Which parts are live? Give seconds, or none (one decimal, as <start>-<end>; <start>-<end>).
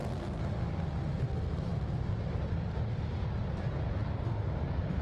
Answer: 0.0-5.0